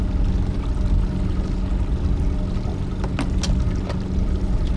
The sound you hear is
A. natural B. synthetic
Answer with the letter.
A